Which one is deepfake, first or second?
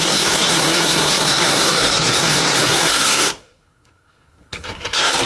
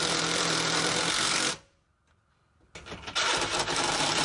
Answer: first